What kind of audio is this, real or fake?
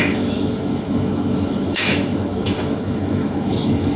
fake